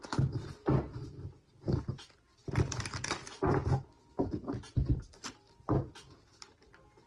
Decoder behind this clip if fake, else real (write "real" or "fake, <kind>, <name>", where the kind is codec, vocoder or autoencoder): real